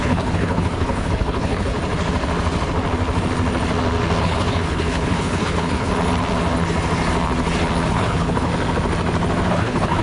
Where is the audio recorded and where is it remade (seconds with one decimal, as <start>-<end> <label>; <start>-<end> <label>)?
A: 0.0-1.7 remade; 1.7-4.2 recorded; 4.2-5.9 remade; 5.9-7.9 recorded; 7.9-8.5 remade; 8.5-9.5 recorded; 9.5-10.0 remade